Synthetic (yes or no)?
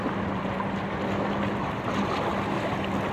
no